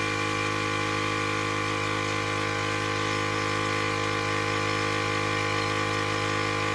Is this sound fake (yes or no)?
no